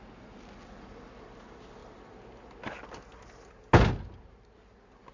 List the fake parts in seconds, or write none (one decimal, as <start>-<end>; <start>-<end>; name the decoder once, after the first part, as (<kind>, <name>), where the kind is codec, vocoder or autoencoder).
none